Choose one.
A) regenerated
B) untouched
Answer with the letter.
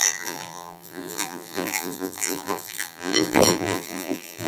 A